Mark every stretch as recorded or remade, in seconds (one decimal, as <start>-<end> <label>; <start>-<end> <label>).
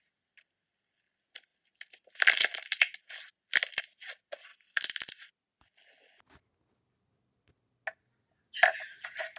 0.0-9.4 recorded